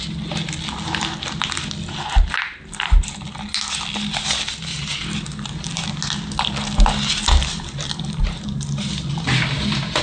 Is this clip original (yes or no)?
yes